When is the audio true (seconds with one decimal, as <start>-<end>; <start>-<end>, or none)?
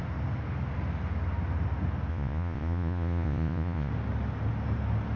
0.0-2.1; 3.9-5.2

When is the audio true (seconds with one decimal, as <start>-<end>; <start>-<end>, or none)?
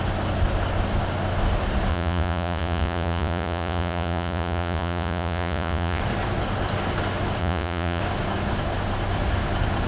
0.0-1.9; 6.0-7.4; 8.0-9.9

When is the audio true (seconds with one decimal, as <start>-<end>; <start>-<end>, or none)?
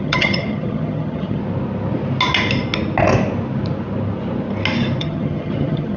1.4-5.0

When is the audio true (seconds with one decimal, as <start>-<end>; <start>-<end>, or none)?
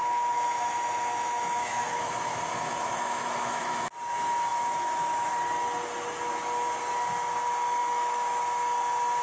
3.8-4.5; 5.3-7.8; 8.4-9.2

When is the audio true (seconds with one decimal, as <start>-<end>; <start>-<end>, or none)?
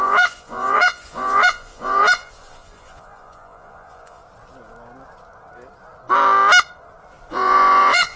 4.2-7.3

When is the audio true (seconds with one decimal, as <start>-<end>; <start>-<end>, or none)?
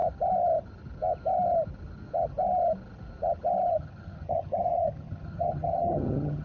0.0-3.7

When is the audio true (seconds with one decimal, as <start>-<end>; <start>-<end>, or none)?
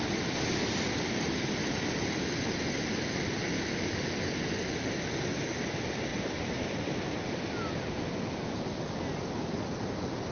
0.0-10.3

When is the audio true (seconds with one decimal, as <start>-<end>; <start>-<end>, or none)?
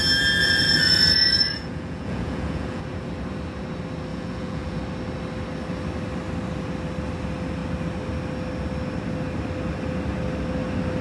0.0-0.4; 2.8-4.1; 4.8-11.0